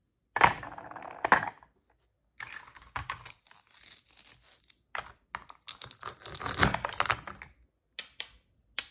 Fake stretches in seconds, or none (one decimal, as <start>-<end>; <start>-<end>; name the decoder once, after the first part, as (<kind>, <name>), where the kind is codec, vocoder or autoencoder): 2.7-3.4 (codec, DAC)